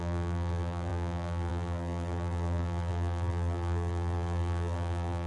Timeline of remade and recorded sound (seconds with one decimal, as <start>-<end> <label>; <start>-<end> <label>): 0.0-5.3 remade